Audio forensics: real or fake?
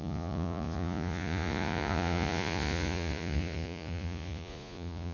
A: fake